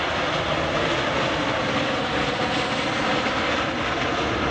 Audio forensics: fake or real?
real